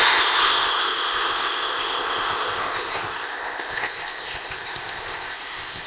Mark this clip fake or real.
fake